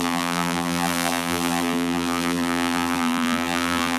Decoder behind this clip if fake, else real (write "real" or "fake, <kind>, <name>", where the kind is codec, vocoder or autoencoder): fake, vocoder, BigVGAN v2